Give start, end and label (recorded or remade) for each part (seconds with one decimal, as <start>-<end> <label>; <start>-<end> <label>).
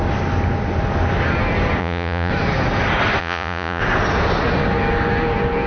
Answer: 0.0-1.8 recorded; 1.8-2.3 remade; 2.3-3.2 recorded; 3.2-3.8 remade; 3.8-5.7 recorded